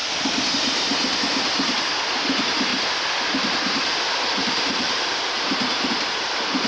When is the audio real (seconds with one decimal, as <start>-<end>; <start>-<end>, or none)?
0.0-2.7; 5.9-6.7